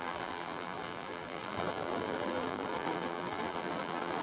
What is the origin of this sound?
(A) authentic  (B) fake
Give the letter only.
B